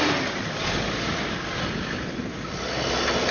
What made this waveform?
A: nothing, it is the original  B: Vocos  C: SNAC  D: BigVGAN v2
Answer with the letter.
A